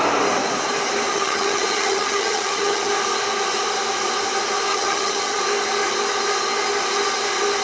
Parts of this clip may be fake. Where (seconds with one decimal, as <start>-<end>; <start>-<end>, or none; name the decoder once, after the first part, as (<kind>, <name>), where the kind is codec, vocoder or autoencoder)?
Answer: 1.1-2.9 (vocoder, HiFi-GAN); 4.7-5.4